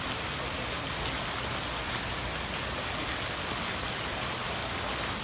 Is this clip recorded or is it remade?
recorded